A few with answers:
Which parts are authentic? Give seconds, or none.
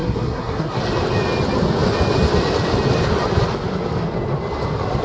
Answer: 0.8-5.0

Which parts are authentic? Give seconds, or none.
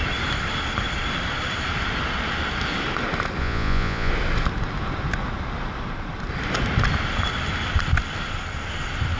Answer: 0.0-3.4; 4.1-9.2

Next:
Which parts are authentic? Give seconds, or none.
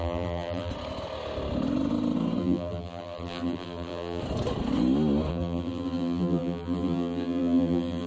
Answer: 0.7-2.4; 4.2-5.3